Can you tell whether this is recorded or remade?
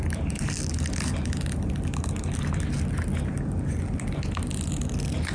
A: recorded